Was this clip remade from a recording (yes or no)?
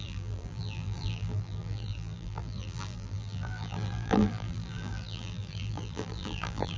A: yes